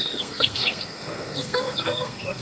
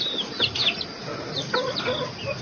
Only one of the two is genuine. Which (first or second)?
second